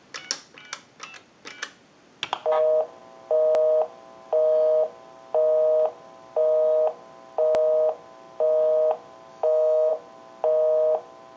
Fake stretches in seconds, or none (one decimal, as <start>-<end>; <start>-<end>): 9.3-9.9